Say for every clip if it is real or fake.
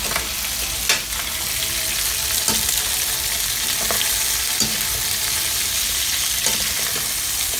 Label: real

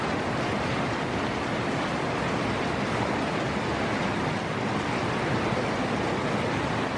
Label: real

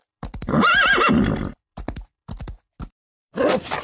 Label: fake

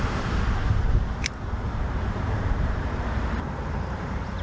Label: fake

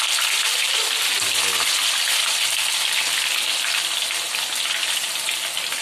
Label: real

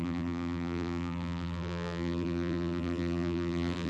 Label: fake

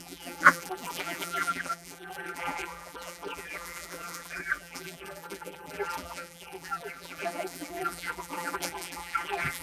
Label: fake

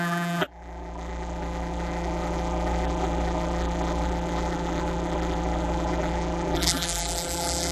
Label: fake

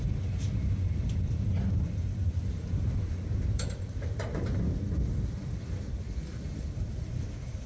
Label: fake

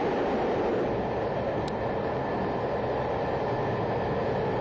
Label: real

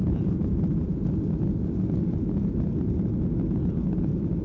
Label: real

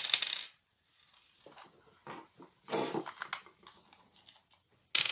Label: real